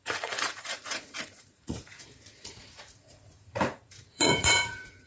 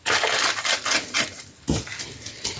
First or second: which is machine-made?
first